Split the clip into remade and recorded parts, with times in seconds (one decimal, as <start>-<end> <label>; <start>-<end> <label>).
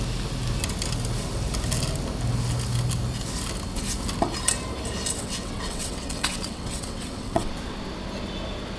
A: 0.0-5.2 recorded; 5.2-7.5 remade; 7.5-8.8 recorded